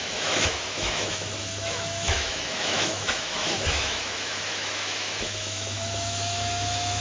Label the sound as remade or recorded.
remade